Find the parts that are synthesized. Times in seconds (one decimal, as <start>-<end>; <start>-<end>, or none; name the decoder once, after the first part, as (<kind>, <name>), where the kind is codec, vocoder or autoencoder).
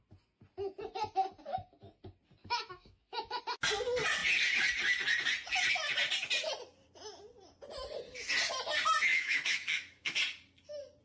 2.4-3.4 (autoencoder, DAC-VAE); 9.1-10.2